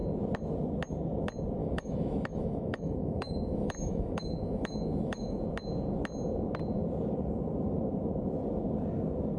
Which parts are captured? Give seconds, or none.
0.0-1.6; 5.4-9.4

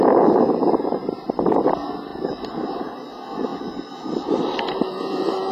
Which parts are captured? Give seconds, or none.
0.0-1.0; 1.6-3.5

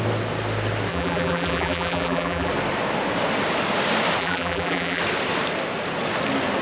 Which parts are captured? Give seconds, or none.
0.0-0.9; 2.5-4.2; 5.0-6.6

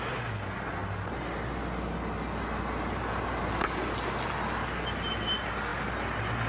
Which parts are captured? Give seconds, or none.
0.0-6.5